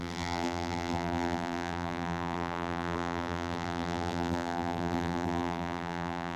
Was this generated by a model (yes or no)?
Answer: yes